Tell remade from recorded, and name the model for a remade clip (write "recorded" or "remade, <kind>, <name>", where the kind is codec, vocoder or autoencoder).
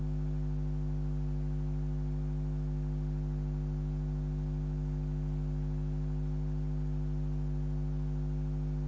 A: recorded